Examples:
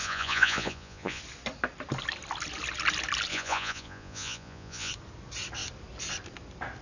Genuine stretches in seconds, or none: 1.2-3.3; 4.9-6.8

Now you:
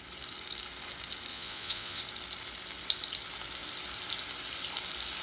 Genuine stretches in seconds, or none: 0.0-1.3; 2.0-5.2

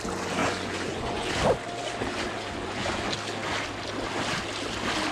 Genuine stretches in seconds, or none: 0.0-0.4; 1.3-2.1; 3.0-5.1

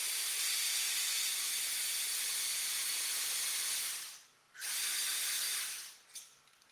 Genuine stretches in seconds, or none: 0.0-0.7; 1.5-2.5; 3.2-6.7

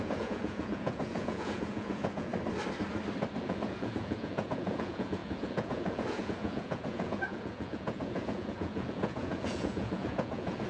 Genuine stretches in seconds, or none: 2.3-3.4

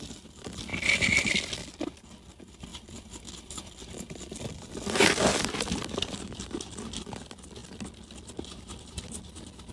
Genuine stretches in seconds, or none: 0.0-9.7